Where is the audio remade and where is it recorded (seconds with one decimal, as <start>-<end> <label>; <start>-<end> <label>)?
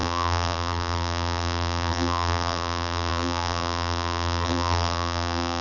0.0-5.6 remade